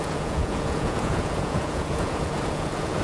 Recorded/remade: remade